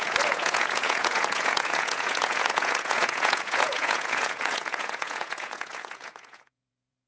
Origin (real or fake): fake